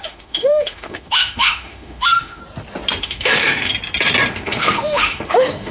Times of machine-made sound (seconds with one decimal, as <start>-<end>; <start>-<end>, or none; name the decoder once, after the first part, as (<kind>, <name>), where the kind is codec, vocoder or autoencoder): 0.0-2.4 (autoencoder, DAC-VAE); 3.0-3.7; 4.3-5.7

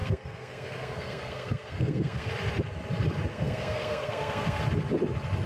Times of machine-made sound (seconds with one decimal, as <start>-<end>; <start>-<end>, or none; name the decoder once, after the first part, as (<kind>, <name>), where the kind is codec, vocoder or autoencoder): 0.0-2.3 (codec, SNAC); 3.3-4.6